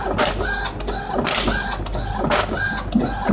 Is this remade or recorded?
recorded